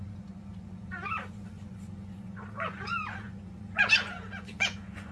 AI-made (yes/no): yes